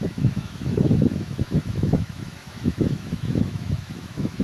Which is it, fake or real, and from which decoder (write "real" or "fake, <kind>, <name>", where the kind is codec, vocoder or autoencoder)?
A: fake, autoencoder, DAC-VAE